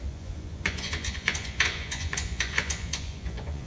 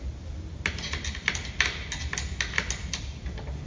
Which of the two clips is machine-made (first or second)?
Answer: first